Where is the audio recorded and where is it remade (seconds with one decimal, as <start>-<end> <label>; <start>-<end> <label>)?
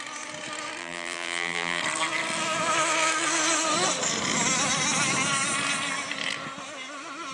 0.0-0.8 recorded; 0.8-1.8 remade; 1.8-7.3 recorded